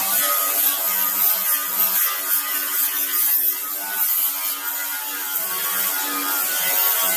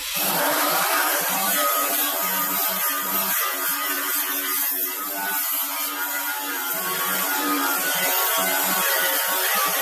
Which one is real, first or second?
first